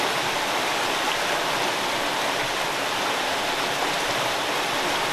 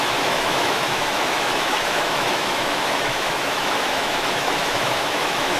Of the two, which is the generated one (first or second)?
second